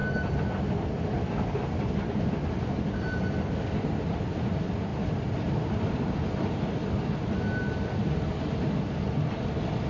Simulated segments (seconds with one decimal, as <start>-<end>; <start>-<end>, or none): none